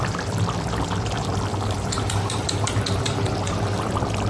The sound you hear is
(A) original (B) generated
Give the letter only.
B